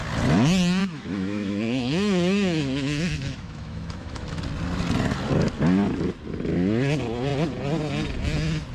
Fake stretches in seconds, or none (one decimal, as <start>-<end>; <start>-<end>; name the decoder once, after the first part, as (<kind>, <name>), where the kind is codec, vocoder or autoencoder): 0.8-4.4 (autoencoder, DAC-VAE)